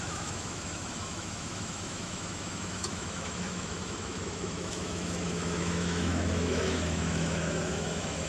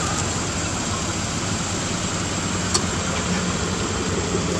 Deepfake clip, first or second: first